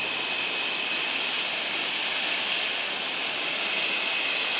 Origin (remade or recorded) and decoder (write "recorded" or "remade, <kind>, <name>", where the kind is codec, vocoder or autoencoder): recorded